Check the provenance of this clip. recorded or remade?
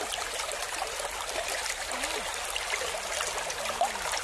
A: recorded